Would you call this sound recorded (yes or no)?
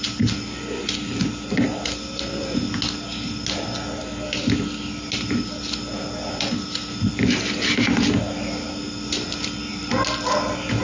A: yes